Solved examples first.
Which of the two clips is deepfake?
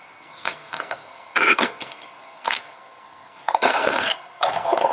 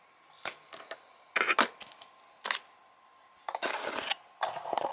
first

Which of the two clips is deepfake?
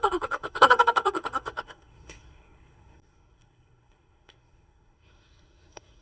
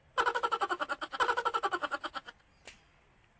first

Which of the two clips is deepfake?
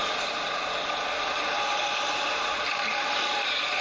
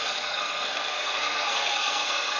second